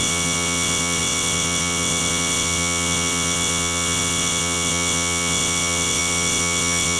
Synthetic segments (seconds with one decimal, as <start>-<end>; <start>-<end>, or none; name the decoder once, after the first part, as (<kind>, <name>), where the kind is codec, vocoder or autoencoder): 0.0-7.0 (vocoder, WaveNeXt)